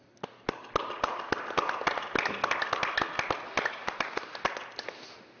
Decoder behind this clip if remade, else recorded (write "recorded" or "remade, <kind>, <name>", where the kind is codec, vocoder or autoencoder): recorded